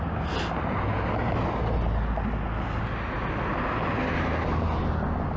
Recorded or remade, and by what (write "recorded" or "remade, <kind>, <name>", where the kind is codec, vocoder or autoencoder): recorded